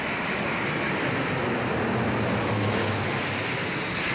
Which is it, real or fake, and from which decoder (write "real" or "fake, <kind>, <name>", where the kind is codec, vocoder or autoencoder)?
real